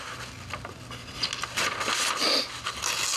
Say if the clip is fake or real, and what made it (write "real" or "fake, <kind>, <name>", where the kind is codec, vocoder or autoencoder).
real